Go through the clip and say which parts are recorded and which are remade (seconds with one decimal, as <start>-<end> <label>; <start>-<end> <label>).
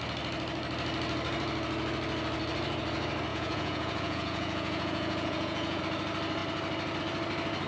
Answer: 0.0-3.3 recorded; 3.3-5.8 remade; 5.8-7.7 recorded